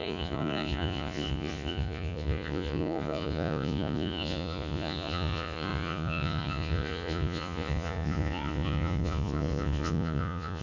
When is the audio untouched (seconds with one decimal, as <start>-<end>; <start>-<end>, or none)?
none